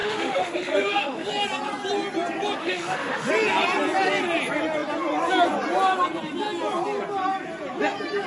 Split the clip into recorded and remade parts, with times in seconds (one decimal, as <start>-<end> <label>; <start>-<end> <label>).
0.0-1.3 remade; 1.3-2.6 recorded; 2.6-3.3 remade; 3.3-8.3 recorded